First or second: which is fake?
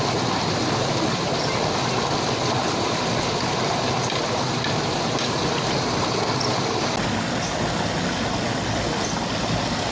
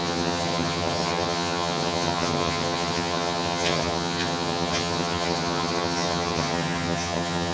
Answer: second